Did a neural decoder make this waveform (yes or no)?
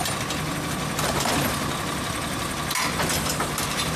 no